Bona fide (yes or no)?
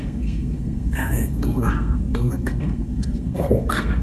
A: no